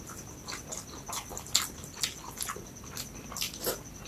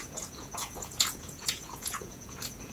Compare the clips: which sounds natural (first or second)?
first